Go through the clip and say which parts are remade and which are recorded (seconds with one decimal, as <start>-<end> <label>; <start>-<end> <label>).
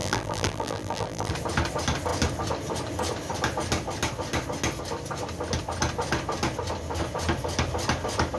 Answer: 0.0-1.3 remade; 1.3-8.4 recorded